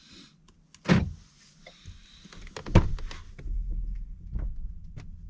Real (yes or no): yes